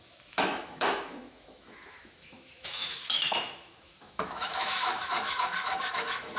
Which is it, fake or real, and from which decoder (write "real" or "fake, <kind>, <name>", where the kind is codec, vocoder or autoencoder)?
fake, autoencoder, DAC-VAE